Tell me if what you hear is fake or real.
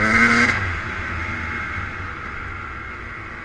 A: real